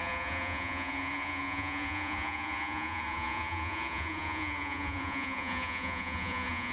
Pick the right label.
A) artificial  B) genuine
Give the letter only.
A